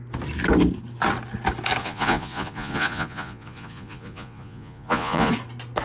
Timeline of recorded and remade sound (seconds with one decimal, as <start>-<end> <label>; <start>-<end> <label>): 0.0-1.8 recorded; 1.8-5.3 remade; 5.3-5.8 recorded